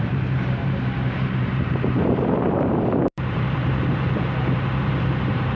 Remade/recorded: remade